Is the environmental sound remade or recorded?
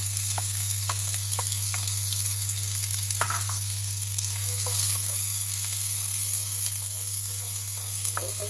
remade